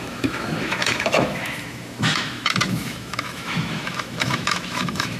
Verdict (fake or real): fake